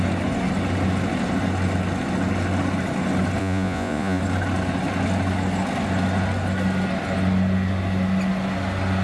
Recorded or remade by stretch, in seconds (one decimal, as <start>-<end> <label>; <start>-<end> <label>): 0.0-3.4 recorded; 3.4-4.2 remade; 4.2-9.0 recorded